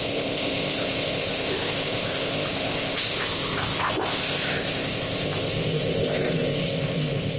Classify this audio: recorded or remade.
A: remade